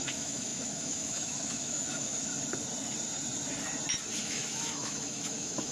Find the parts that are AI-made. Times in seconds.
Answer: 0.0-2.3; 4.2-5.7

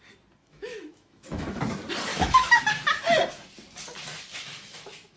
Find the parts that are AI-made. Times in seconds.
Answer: 0.4-1.6; 2.1-2.6; 4.3-5.2

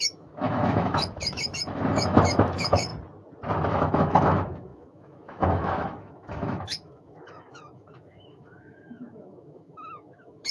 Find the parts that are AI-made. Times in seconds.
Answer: 0.0-2.9; 3.7-10.5

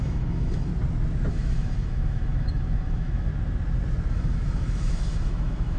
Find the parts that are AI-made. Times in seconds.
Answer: 0.0-0.7; 1.3-3.3; 4.1-5.8

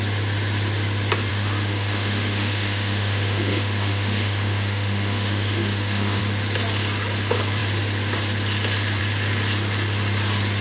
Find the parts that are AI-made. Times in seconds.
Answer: 1.3-6.2

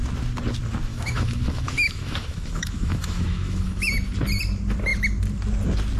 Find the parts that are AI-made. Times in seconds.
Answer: 0.9-3.9

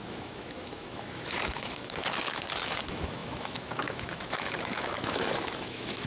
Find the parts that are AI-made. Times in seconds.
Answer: 0.0-6.1